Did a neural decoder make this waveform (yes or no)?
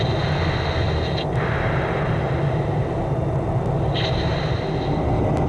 no